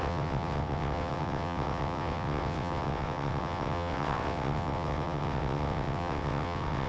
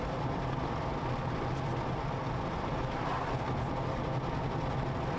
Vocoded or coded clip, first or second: first